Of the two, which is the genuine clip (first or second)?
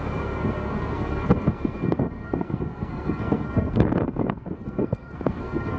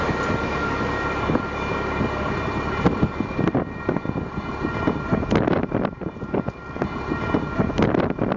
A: second